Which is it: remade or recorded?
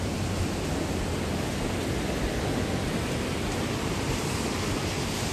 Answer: recorded